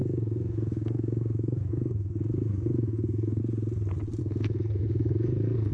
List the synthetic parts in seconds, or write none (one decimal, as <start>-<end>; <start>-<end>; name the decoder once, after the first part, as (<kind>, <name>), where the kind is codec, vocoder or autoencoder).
0.0-3.4 (codec, SNAC); 4.2-5.7